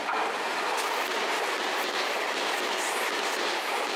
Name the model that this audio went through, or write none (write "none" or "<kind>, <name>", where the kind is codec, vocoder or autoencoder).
vocoder, BigVGAN v2